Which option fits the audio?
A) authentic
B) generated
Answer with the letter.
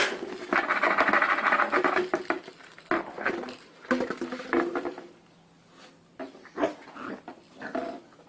A